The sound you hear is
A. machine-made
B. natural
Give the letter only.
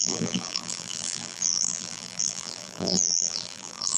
A